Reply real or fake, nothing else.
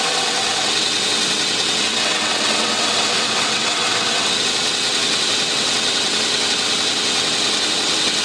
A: fake